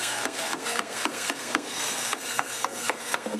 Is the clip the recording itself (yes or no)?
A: no